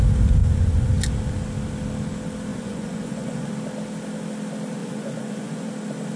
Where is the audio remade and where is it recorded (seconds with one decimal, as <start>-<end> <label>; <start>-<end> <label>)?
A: 0.0-0.4 recorded; 0.4-0.9 remade; 0.9-2.5 recorded; 2.5-3.5 remade; 3.5-4.8 recorded; 4.8-5.7 remade; 5.7-6.2 recorded